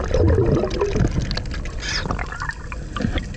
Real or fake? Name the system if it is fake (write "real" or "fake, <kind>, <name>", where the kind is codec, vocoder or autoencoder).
real